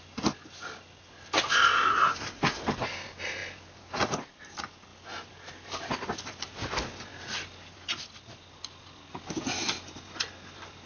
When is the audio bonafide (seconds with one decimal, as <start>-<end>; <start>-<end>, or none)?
0.0-1.9; 2.6-10.9